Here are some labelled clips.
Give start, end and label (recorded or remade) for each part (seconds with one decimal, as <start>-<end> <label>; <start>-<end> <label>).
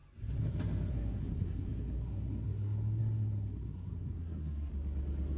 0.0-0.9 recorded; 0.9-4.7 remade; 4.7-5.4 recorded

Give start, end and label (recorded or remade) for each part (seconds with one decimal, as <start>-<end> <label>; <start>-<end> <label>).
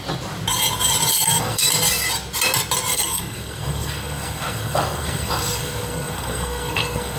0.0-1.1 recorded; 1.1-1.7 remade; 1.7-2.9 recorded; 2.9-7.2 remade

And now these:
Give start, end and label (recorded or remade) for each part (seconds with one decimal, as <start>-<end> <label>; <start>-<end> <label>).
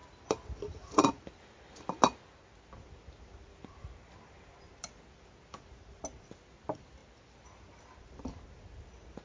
0.0-9.2 recorded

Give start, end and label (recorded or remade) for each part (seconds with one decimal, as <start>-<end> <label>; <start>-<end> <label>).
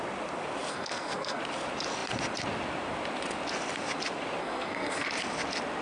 0.0-0.7 recorded; 0.7-1.4 remade; 1.4-4.4 recorded; 4.4-5.1 remade; 5.1-5.8 recorded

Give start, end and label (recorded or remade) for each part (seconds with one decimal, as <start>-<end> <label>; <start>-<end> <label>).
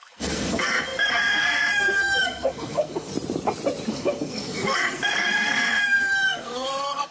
0.0-3.1 remade; 3.1-3.9 recorded; 3.9-7.1 remade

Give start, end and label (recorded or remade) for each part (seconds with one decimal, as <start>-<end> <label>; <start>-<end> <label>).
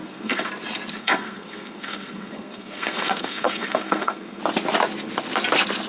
0.0-0.5 remade; 0.5-0.9 recorded; 0.9-4.4 remade; 4.4-5.9 recorded